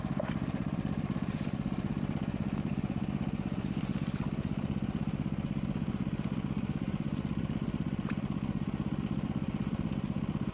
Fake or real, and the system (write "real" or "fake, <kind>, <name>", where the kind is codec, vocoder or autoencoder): real